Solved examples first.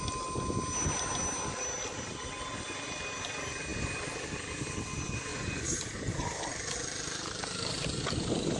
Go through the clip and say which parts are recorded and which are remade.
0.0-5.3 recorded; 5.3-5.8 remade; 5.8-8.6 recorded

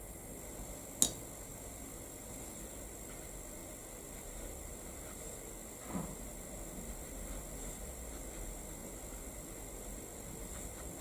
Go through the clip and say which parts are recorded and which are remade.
0.0-11.0 recorded

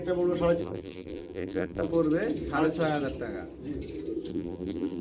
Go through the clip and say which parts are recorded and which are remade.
0.0-0.6 recorded; 0.6-1.9 remade; 1.9-4.3 recorded; 4.3-5.0 remade

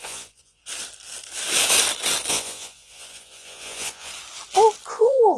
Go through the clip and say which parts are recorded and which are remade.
0.0-0.6 remade; 0.6-2.3 recorded; 2.3-4.1 remade; 4.1-4.9 recorded; 4.9-5.4 remade

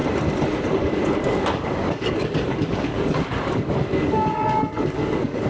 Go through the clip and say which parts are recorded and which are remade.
0.0-0.8 recorded; 0.8-5.5 remade

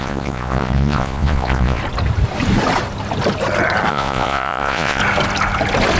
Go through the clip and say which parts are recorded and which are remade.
0.0-1.8 remade; 1.8-3.9 recorded; 3.9-5.0 remade; 5.0-6.0 recorded